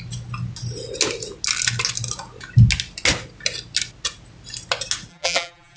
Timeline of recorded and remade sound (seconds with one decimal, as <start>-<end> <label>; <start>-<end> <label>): 0.0-5.1 recorded; 5.1-5.8 remade